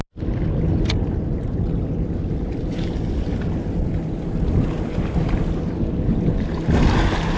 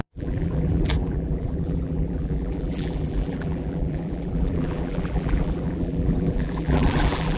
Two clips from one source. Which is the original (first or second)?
first